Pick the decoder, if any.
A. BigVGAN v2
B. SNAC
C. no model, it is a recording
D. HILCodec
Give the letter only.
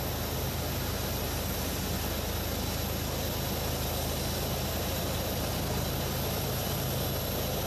C